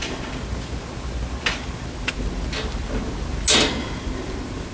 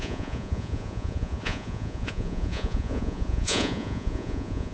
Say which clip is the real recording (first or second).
first